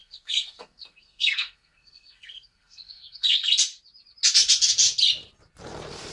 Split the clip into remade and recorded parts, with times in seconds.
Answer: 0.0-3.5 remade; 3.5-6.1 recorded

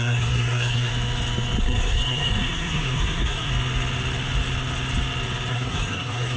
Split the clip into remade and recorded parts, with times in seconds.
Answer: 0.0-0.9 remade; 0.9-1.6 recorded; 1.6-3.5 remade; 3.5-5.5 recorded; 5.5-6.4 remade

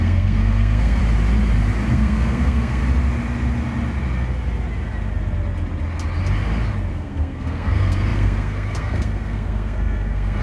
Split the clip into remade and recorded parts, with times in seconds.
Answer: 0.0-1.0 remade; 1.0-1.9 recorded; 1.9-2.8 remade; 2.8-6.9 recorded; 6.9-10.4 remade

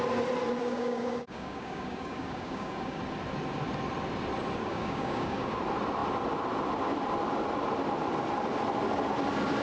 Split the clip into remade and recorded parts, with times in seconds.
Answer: 0.0-0.6 recorded; 0.6-3.0 remade; 3.0-4.6 recorded; 4.6-5.6 remade; 5.6-9.6 recorded

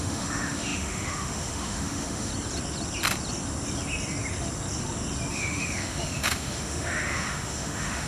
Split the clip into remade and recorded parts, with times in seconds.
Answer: 0.0-2.3 remade; 2.3-5.3 recorded; 5.3-8.1 remade

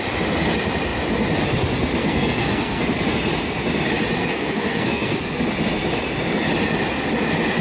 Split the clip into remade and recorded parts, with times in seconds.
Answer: 0.0-2.0 recorded; 2.0-2.8 remade; 2.8-4.2 recorded; 4.2-5.2 remade; 5.2-7.6 recorded